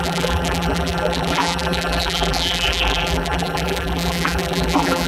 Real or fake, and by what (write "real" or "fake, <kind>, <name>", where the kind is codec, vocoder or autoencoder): fake, vocoder, BigVGAN v2